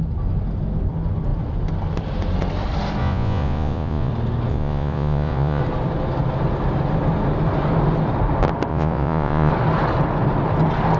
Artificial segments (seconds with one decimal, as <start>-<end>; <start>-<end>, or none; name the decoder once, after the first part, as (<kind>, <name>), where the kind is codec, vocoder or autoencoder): 3.0-4.1 (vocoder, Vocos); 4.5-5.6; 8.7-9.5